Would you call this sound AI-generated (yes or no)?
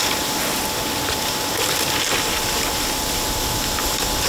no